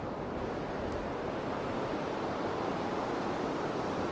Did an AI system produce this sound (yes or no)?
no